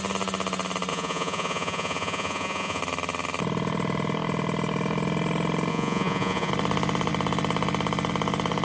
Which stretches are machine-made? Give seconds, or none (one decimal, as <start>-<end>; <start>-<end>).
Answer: 0.9-2.8; 5.7-6.5